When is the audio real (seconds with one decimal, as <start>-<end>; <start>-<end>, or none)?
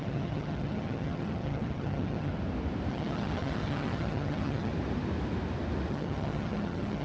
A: 2.3-2.9; 4.7-5.9